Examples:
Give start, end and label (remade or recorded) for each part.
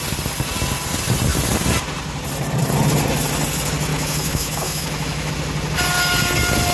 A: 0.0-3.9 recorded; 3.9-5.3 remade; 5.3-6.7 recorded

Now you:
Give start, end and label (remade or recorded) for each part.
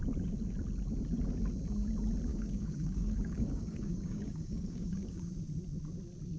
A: 0.0-2.3 recorded; 2.3-5.3 remade; 5.3-6.4 recorded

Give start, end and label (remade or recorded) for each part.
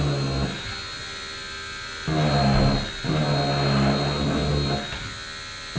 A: 0.0-5.8 recorded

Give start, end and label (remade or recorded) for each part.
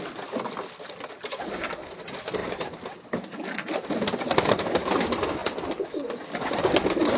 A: 0.0-5.4 remade; 5.4-6.6 recorded; 6.6-7.2 remade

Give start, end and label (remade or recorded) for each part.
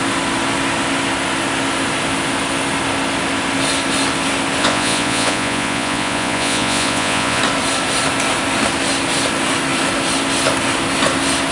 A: 0.0-4.6 recorded; 4.6-7.4 remade; 7.4-11.5 recorded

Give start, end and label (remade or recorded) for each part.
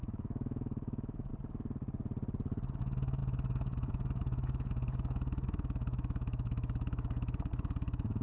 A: 0.0-1.3 remade; 1.3-2.8 recorded; 2.8-8.2 remade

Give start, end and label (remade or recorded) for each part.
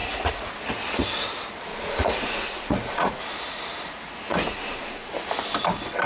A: 0.0-0.5 remade; 0.5-1.7 recorded; 1.7-3.2 remade; 3.2-4.3 recorded; 4.3-5.1 remade; 5.1-6.1 recorded